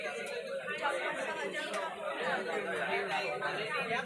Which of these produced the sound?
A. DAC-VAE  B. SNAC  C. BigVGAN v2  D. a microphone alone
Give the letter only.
D